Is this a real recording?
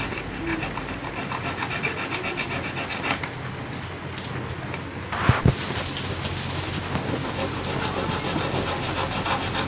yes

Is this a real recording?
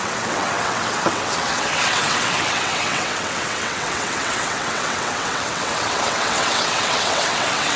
no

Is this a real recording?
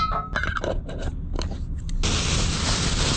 yes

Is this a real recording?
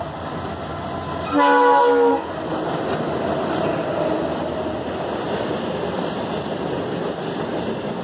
yes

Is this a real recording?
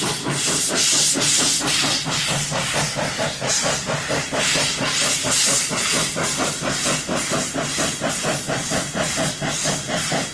yes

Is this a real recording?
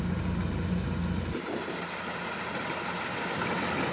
yes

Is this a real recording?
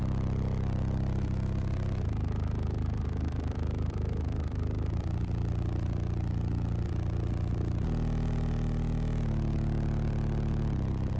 yes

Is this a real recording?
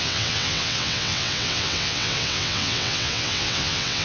no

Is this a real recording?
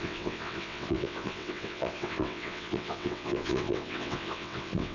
no